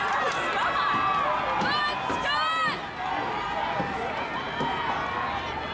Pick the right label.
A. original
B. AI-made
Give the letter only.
A